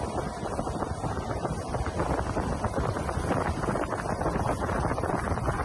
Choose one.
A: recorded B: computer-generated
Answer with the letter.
A